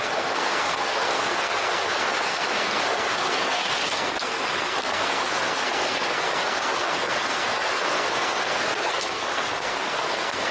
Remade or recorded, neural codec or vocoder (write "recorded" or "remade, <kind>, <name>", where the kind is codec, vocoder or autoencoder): remade, codec, SNAC